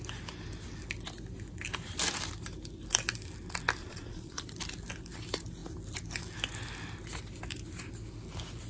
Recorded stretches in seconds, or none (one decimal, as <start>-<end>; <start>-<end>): 0.0-3.8; 4.4-8.7